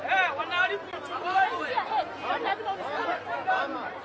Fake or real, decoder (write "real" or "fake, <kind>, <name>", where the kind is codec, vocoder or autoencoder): real